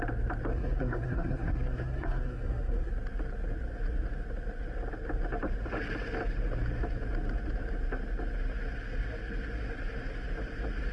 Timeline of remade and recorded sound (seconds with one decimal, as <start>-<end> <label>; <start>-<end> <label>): 0.0-0.5 recorded; 0.5-2.9 remade; 2.9-10.9 recorded